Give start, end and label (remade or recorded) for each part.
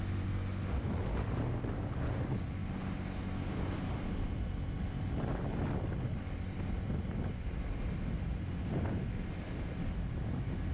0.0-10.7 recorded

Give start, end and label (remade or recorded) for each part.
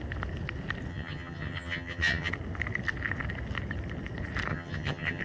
0.0-0.9 recorded; 0.9-2.3 remade; 2.3-4.5 recorded; 4.5-5.2 remade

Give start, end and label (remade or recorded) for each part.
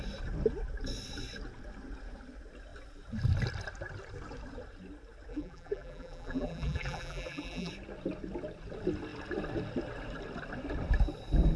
0.0-5.3 recorded; 5.3-7.7 remade; 7.7-11.6 recorded